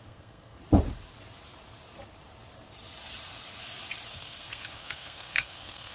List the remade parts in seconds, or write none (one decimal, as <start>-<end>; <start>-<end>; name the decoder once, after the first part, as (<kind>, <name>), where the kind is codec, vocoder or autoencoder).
0.0-0.6 (codec, SNAC); 4.1-5.9